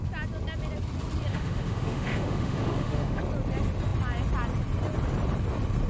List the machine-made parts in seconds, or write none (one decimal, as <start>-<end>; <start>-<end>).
1.3-3.2